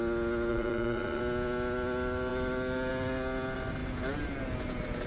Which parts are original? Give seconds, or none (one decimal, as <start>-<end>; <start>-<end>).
0.0-0.5; 1.2-5.1